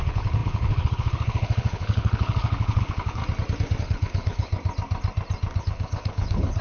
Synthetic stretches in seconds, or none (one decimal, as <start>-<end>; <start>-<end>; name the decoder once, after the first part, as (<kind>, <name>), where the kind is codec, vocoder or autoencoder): 0.0-3.2 (codec, HILCodec); 3.8-4.5; 5.6-6.6